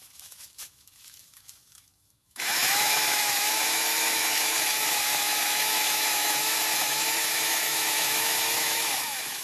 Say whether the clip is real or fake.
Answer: fake